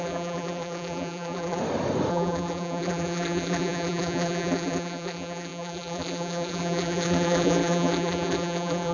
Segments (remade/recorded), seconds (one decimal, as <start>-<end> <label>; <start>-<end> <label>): 0.0-1.6 remade; 1.6-2.1 recorded; 2.1-8.9 remade